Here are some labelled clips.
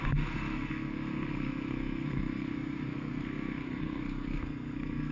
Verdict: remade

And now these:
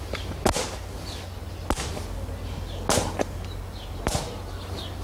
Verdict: recorded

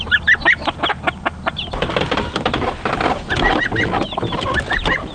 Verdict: recorded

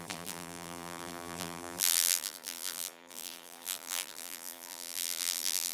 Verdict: remade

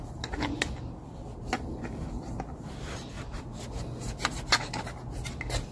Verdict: recorded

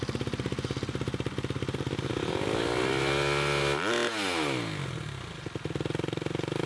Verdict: recorded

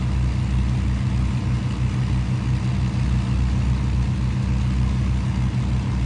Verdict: recorded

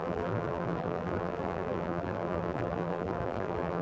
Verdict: remade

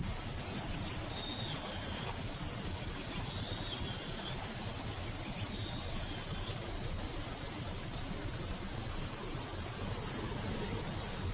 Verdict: recorded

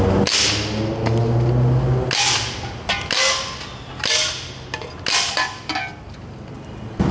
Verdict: recorded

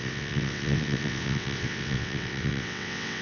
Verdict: remade